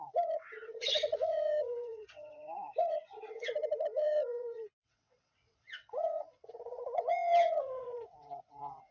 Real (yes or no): no